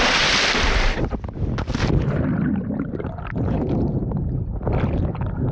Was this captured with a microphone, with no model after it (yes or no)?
yes